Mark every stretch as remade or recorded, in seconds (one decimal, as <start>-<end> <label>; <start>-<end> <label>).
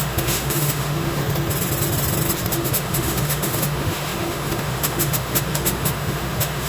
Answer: 0.0-1.2 remade; 1.2-2.5 recorded; 2.5-6.7 remade